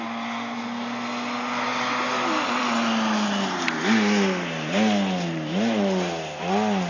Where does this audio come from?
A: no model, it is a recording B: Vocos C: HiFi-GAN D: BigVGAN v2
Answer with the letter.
A